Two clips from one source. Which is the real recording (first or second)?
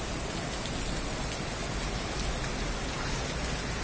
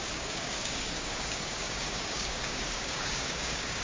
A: first